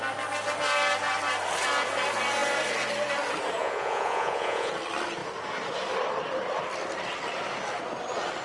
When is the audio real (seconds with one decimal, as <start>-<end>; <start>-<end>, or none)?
0.0-3.6; 4.7-8.4